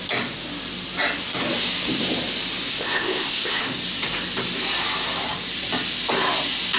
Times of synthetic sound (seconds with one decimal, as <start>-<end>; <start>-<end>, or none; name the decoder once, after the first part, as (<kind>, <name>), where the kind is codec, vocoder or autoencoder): 2.7-3.6 (codec, ZipCodec)